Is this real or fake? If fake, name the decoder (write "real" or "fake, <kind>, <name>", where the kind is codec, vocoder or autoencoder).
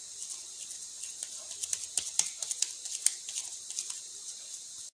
real